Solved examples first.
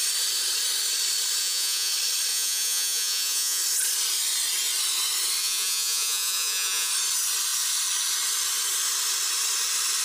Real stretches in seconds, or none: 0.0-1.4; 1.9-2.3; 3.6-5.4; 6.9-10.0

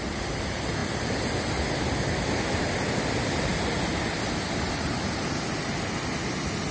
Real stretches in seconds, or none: 0.0-6.7

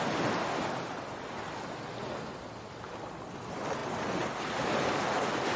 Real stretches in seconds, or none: 0.0-5.6

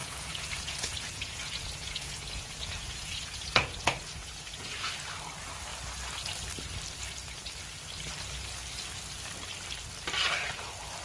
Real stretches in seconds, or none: 4.9-11.0

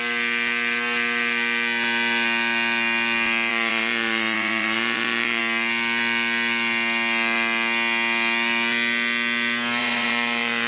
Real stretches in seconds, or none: 0.0-3.5; 5.4-9.8